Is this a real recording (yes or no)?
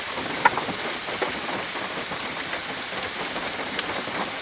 yes